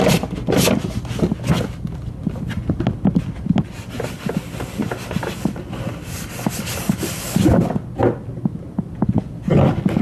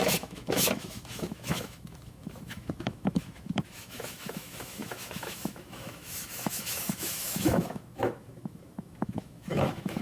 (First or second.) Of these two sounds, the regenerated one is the second